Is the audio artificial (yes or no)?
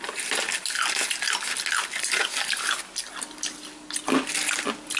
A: no